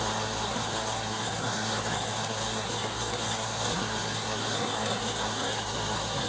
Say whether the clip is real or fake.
fake